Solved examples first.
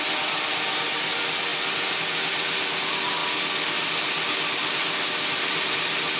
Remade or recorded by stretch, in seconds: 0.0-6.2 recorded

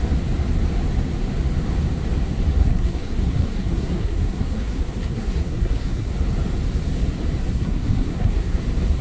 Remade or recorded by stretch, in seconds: 0.0-2.6 recorded; 2.6-6.1 remade; 6.1-7.5 recorded; 7.5-8.6 remade; 8.6-9.0 recorded

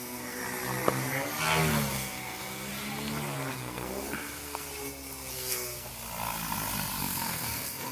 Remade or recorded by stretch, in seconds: 0.0-0.4 remade; 0.4-1.9 recorded; 1.9-2.7 remade; 2.7-3.5 recorded; 3.5-4.7 remade; 4.7-5.3 recorded; 5.3-5.9 remade; 5.9-7.0 recorded; 7.0-7.9 remade

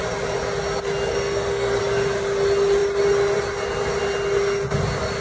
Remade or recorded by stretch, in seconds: 0.0-1.1 recorded; 1.1-1.8 remade; 1.8-5.2 recorded

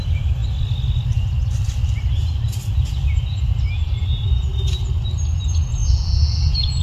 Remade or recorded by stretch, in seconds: 0.0-6.8 recorded

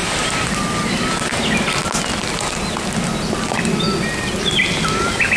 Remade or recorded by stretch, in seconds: 0.0-5.4 recorded